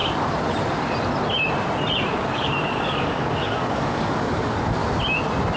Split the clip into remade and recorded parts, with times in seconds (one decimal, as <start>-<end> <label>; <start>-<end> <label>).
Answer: 0.0-2.1 recorded; 2.1-4.8 remade; 4.8-5.6 recorded